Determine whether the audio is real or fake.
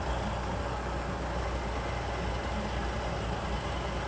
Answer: real